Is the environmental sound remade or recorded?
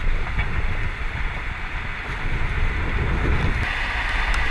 recorded